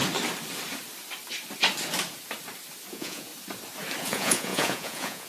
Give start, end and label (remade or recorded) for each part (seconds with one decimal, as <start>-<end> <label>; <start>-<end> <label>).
0.0-2.9 recorded; 2.9-3.3 remade; 3.3-4.0 recorded; 4.0-5.3 remade